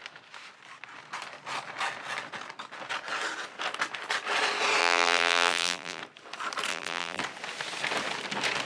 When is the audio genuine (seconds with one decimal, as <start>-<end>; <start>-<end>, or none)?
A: 0.0-4.8; 6.0-6.7; 7.2-8.7

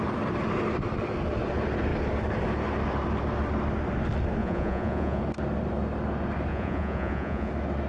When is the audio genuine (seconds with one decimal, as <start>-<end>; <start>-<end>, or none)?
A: 0.0-4.4; 5.2-6.5; 7.5-7.9

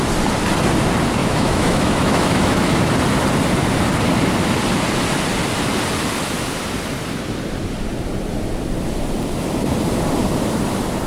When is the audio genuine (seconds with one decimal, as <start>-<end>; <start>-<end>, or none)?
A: 0.0-1.2; 2.9-11.1

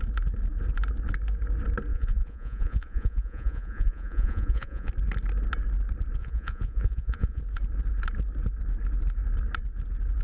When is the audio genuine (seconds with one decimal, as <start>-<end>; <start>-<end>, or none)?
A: 0.0-1.9; 4.9-6.2; 7.4-10.2

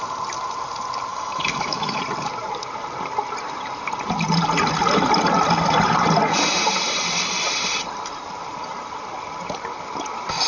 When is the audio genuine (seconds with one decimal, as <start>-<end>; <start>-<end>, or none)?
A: 0.0-1.1; 2.0-10.5

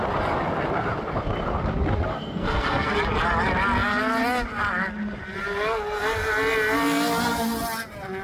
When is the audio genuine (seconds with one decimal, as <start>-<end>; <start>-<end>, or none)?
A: 0.0-2.1; 2.9-8.2

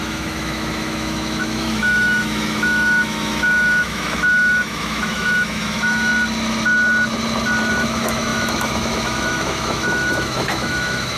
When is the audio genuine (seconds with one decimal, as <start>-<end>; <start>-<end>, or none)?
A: 6.1-7.7

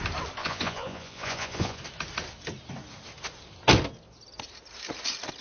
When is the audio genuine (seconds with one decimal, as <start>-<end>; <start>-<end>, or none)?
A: 0.0-0.4; 1.8-5.4